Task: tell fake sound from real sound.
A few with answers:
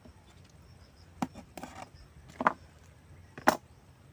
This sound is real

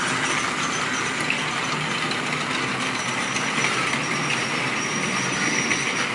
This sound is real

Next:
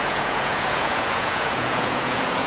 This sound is fake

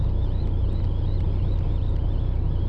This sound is real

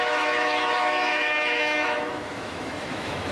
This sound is fake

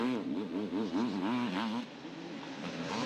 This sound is real